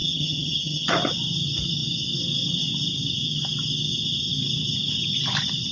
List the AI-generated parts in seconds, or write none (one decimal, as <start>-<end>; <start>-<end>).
0.0-0.9